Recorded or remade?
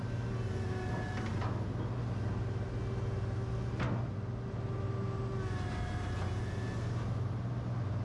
recorded